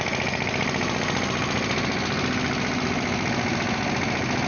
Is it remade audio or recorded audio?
recorded